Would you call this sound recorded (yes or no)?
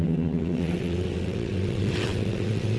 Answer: no